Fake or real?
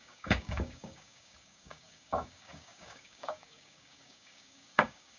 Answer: fake